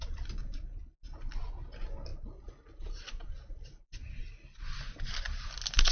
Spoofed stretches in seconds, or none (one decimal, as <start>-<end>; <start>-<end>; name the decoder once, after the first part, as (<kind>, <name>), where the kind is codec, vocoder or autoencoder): 2.1-3.8 (vocoder, BigVGAN v2)